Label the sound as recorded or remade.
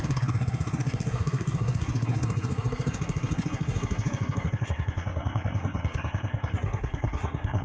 remade